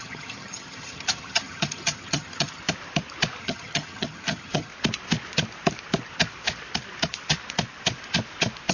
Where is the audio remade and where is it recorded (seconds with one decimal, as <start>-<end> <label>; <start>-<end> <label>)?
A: 0.0-2.6 remade; 2.6-3.4 recorded; 3.4-4.7 remade; 4.7-8.7 recorded